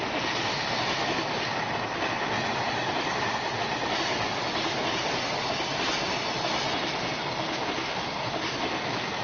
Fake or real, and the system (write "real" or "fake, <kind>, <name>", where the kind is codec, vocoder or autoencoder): real